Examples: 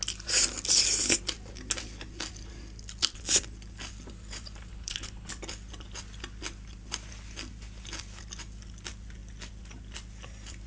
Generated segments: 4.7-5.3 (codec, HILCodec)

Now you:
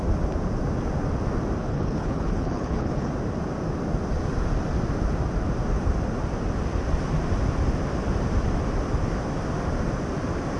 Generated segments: 1.6-3.1 (codec, HILCodec)

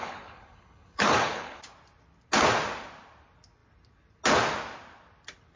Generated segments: 0.0-1.6 (codec, HILCodec)

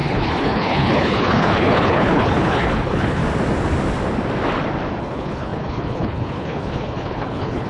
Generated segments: 0.0-3.2 (codec, HILCodec); 5.0-7.7

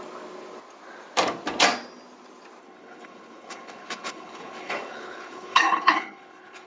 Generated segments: 2.6-6.7 (codec, HILCodec)

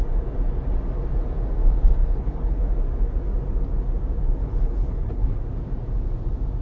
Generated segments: 2.0-2.6 (codec, HILCodec); 4.4-5.4

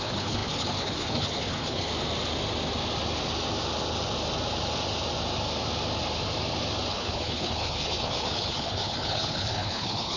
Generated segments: 0.0-1.9 (codec, HILCodec); 6.9-10.2

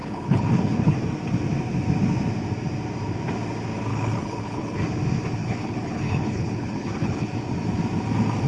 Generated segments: 0.0-1.0 (codec, HILCodec); 3.9-4.8; 5.4-7.3